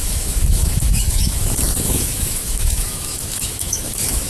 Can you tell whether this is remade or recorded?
remade